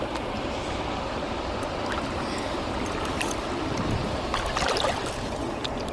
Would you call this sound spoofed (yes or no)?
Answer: yes